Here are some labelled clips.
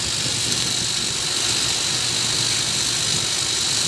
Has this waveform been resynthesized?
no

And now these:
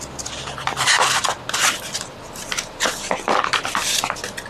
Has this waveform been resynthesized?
no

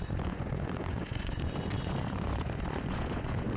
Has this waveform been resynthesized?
yes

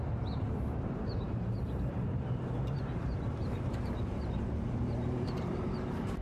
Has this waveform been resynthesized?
yes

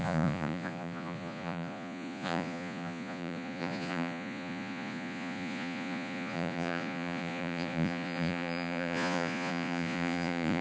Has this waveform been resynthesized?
yes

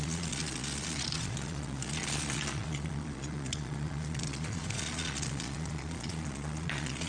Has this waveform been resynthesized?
yes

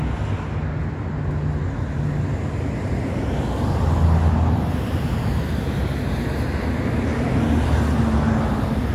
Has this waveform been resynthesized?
no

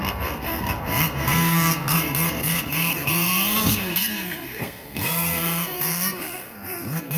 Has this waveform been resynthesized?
yes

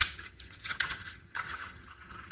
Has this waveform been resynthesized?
yes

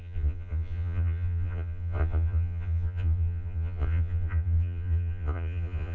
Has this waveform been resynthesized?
yes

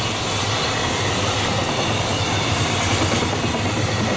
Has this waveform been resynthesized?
no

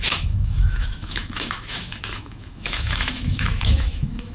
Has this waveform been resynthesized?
yes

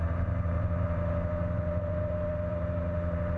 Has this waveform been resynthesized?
yes